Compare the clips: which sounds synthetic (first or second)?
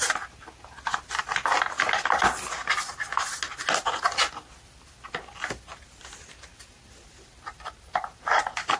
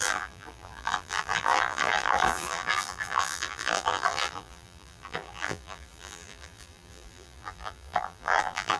second